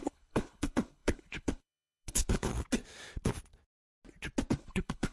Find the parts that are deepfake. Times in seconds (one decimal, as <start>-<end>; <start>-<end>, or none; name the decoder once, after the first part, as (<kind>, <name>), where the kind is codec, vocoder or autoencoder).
0.0-2.5 (codec, HILCodec); 4.5-5.1